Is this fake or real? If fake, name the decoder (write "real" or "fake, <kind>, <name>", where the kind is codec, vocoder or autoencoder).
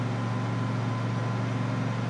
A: real